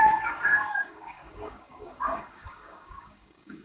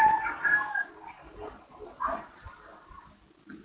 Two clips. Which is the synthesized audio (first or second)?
first